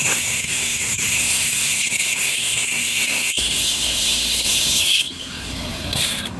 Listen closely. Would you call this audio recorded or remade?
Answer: remade